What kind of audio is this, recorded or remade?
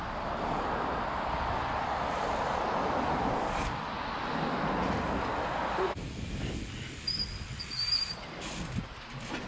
recorded